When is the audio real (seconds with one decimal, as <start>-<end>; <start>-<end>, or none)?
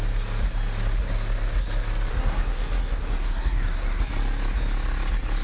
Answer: 0.0-2.1; 4.0-5.4